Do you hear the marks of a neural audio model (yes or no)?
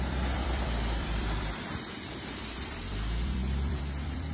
yes